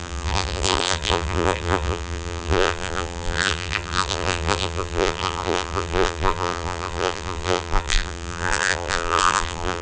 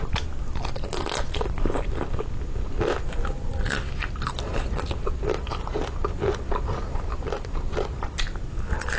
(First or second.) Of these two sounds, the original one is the second